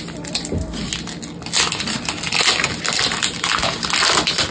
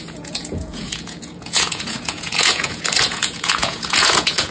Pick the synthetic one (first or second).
second